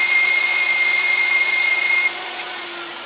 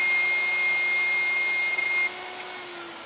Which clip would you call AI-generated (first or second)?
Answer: first